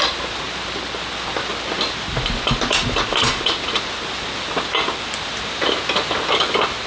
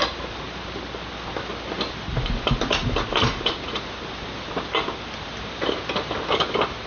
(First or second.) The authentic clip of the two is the first